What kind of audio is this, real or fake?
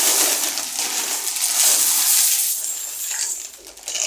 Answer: real